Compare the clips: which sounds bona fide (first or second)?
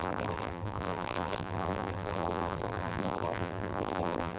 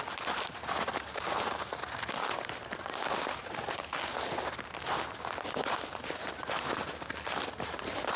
second